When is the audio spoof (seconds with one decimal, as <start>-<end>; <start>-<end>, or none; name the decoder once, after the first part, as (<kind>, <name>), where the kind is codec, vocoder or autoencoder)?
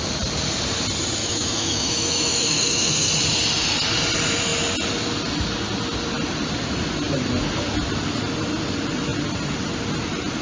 1.2-3.1 (autoencoder, DAC-VAE)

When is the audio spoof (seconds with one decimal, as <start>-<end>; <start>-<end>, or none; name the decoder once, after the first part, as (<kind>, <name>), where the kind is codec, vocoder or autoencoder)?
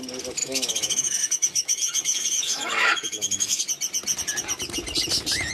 0.4-3.6 (autoencoder, DAC-VAE)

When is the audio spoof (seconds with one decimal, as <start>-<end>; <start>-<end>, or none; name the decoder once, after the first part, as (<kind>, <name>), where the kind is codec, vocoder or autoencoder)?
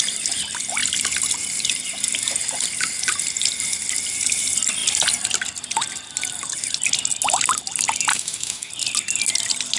8.1-8.7 (autoencoder, DAC-VAE)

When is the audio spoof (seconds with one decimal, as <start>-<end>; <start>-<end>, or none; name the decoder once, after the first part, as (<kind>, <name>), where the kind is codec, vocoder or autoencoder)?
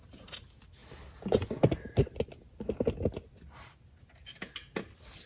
none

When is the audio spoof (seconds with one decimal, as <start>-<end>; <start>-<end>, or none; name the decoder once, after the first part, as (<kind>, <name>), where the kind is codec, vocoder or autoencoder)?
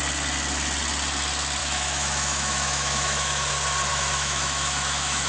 1.6-3.5 (autoencoder, DAC-VAE); 3.9-5.3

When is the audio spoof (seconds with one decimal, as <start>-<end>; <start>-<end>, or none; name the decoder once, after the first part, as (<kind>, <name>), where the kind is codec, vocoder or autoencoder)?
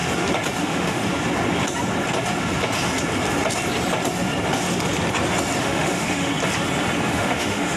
0.6-1.0 (autoencoder, DAC-VAE); 5.6-6.3; 7.1-7.8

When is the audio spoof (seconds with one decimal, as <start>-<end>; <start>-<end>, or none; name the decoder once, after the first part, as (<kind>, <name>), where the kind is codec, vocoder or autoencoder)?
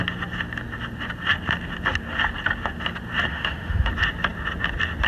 3.3-3.9 (autoencoder, DAC-VAE)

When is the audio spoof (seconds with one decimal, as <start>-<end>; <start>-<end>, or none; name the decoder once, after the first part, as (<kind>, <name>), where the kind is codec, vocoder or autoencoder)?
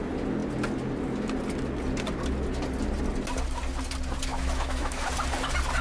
4.3-5.1 (autoencoder, DAC-VAE)